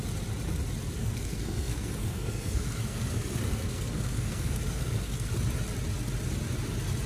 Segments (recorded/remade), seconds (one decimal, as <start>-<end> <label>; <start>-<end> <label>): 0.0-1.0 recorded; 1.0-5.3 remade; 5.3-7.1 recorded